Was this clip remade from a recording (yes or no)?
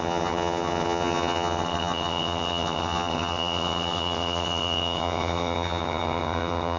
yes